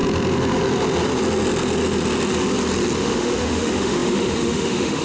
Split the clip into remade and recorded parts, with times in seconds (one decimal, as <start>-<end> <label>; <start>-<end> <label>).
0.0-3.0 recorded; 3.0-5.0 remade